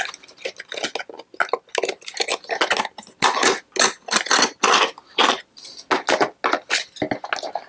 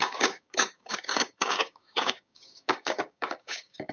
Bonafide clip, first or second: first